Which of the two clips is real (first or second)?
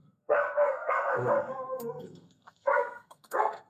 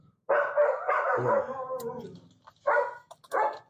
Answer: second